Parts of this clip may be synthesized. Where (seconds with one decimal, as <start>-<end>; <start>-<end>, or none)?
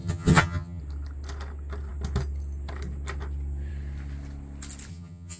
0.0-0.8; 4.9-5.4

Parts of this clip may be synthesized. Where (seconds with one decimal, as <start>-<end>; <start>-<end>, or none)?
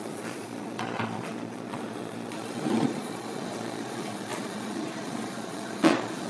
0.0-6.3